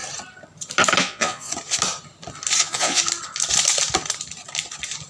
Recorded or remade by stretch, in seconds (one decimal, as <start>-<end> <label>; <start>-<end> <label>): 0.0-1.0 recorded; 1.0-1.5 remade; 1.5-2.6 recorded; 2.6-3.0 remade; 3.0-5.1 recorded

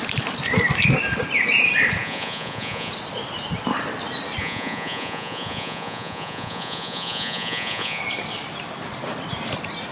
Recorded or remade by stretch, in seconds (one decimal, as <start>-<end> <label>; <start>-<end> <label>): 0.0-2.0 recorded; 2.0-2.9 remade; 2.9-4.4 recorded; 4.4-8.0 remade; 8.0-9.9 recorded

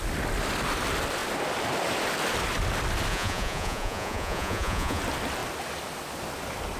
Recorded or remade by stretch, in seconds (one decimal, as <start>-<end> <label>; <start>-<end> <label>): 0.0-3.1 recorded; 3.1-5.0 remade; 5.0-6.8 recorded

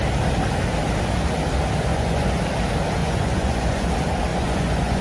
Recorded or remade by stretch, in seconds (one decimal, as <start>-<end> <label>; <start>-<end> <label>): 0.0-1.9 recorded; 1.9-2.4 remade; 2.4-3.0 recorded; 3.0-3.9 remade; 3.9-4.3 recorded; 4.3-5.0 remade